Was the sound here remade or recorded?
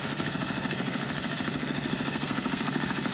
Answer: remade